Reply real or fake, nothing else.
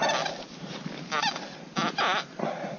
real